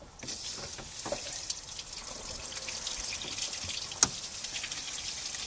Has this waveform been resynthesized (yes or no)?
no